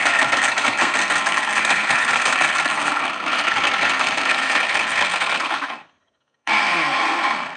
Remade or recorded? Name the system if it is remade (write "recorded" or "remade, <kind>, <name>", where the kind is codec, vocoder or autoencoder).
remade, codec, SNAC